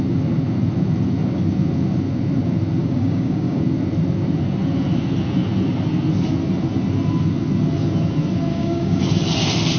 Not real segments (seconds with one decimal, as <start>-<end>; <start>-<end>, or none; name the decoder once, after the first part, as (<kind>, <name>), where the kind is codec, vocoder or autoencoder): 2.8-3.6 (codec, DAC); 8.5-9.0